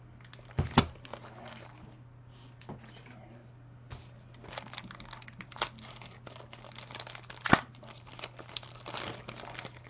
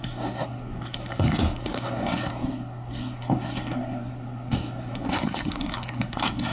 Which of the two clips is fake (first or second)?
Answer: second